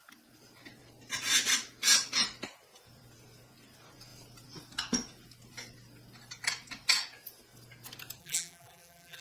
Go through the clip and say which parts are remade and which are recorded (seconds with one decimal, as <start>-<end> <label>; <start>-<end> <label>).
0.0-8.2 recorded; 8.2-9.2 remade

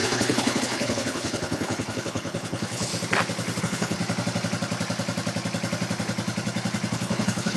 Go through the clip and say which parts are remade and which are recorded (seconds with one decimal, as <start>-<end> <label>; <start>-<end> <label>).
0.0-2.9 remade; 2.9-3.6 recorded; 3.6-4.0 remade; 4.0-6.9 recorded; 6.9-7.6 remade